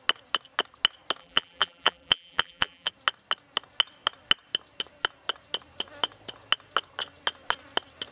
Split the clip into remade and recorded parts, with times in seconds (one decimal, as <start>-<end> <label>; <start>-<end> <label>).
0.0-1.2 recorded; 1.2-2.9 remade; 2.9-8.1 recorded